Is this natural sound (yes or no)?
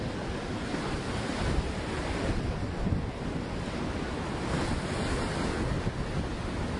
yes